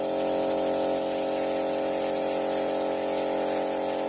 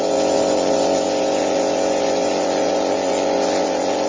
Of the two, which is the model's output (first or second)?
second